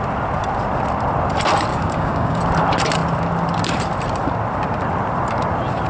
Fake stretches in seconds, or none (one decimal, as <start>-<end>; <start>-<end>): 1.7-2.4